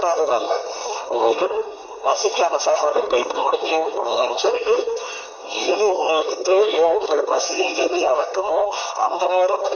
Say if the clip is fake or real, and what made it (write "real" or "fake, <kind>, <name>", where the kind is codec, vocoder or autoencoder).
fake, codec, SNAC